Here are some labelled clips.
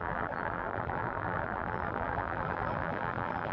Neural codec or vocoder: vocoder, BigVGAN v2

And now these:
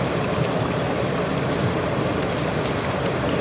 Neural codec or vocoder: none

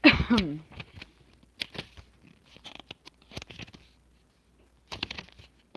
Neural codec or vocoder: none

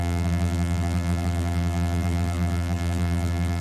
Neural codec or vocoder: vocoder, BigVGAN v2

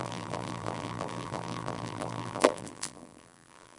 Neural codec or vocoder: vocoder, BigVGAN v2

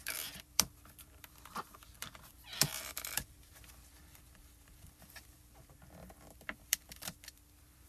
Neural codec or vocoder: vocoder, BigVGAN v2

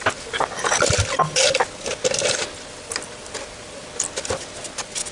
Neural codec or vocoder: none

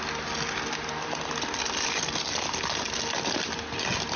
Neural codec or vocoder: none